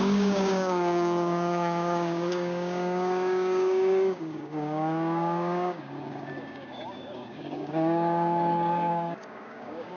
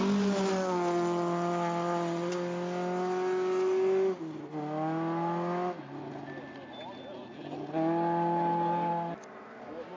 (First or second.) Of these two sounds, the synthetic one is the first